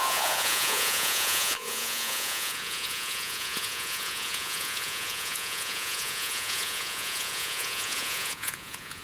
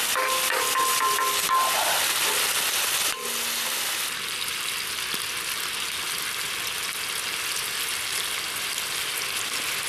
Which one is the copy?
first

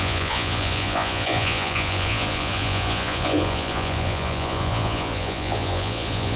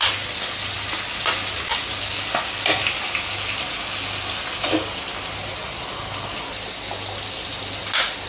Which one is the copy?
first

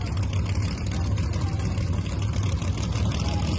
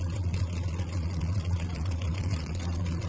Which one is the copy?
second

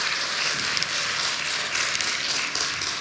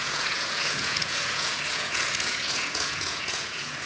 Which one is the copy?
second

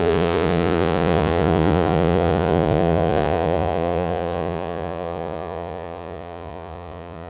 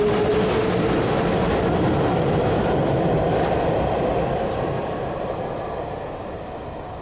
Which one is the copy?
first